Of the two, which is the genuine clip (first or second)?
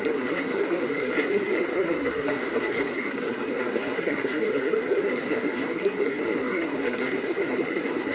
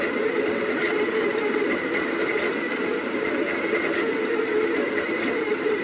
second